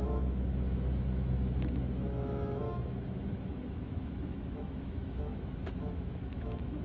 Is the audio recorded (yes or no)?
no